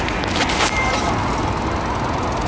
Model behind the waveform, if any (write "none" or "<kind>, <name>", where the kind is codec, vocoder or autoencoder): none